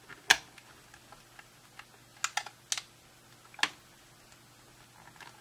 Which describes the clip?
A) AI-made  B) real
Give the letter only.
B